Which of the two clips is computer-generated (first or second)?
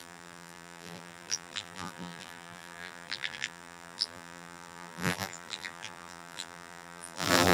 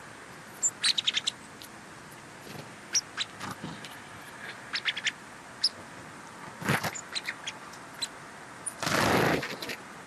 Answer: first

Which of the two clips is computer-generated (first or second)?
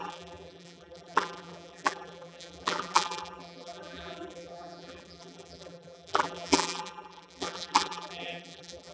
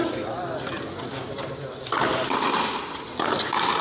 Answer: first